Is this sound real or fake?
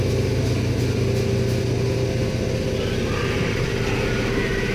real